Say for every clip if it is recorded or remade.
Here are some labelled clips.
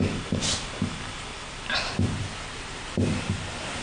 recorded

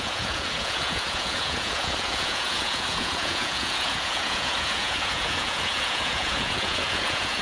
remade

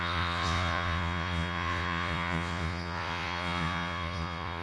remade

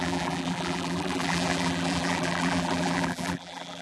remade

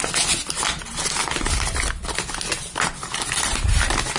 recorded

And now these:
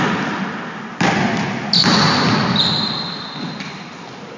recorded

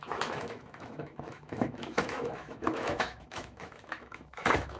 remade